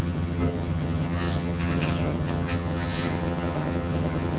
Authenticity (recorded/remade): remade